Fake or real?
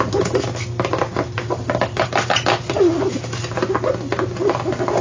real